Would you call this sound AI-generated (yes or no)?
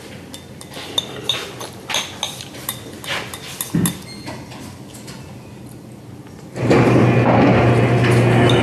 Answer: no